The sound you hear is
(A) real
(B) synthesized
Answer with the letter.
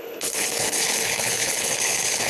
B